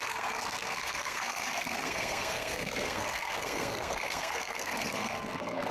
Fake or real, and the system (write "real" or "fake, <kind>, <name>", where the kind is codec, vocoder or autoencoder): fake, codec, SNAC